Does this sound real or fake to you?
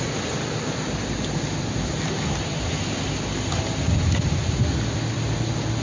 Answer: real